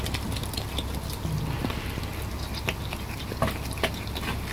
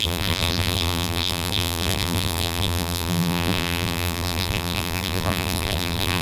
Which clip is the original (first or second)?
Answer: first